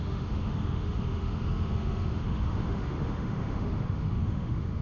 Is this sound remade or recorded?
remade